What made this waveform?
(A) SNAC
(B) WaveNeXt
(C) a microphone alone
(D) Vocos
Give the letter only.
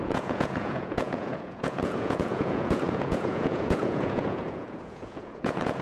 D